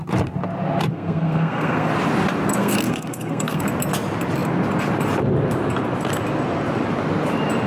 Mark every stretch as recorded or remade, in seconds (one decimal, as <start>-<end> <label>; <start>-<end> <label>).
0.0-0.9 recorded; 0.9-1.9 remade; 1.9-2.5 recorded; 2.5-3.6 remade; 3.6-7.7 recorded